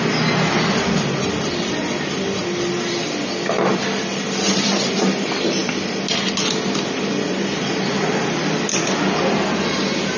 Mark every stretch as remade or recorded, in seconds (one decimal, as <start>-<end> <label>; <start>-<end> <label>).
0.0-10.2 recorded